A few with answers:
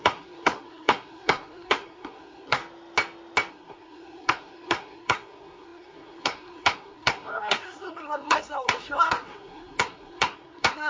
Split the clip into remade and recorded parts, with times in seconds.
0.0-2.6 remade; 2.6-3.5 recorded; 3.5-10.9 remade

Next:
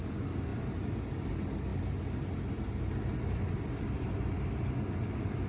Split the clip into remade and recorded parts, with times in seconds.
0.0-0.5 recorded; 0.5-1.0 remade; 1.0-5.5 recorded

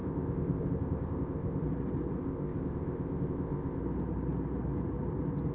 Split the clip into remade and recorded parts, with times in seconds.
0.0-1.6 remade; 1.6-2.2 recorded; 2.2-3.8 remade; 3.8-5.5 recorded

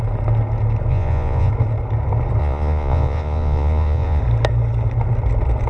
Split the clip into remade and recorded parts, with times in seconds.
0.0-0.9 recorded; 0.9-1.5 remade; 1.5-2.4 recorded; 2.4-4.2 remade; 4.2-5.7 recorded

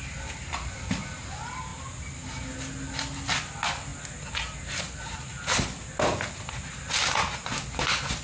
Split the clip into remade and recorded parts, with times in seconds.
0.0-8.2 recorded

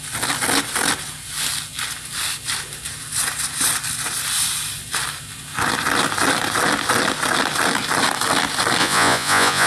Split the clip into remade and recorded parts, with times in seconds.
0.0-8.8 recorded; 8.8-9.7 remade

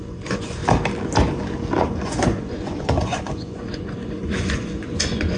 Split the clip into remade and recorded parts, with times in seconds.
0.0-0.6 remade; 0.6-1.8 recorded; 1.8-5.4 remade